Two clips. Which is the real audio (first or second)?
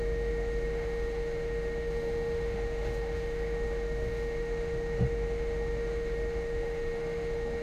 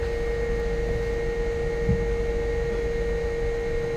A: second